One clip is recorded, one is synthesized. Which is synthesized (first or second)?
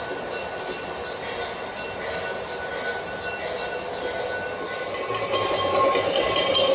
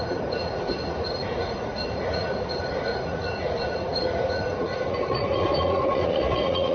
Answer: second